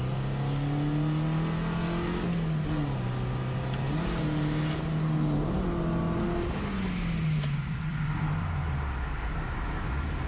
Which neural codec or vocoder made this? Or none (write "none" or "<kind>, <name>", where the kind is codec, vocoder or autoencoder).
none